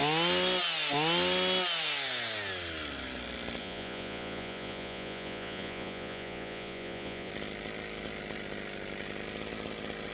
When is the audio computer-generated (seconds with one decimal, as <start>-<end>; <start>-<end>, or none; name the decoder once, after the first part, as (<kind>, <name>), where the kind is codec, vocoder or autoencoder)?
3.6-7.3 (vocoder, Vocos)